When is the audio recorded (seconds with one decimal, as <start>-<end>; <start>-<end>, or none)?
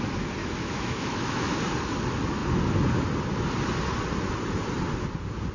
0.0-0.4; 1.6-5.5